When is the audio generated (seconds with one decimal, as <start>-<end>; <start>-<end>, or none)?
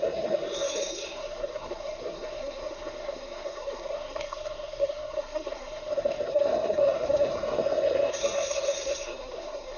0.0-9.8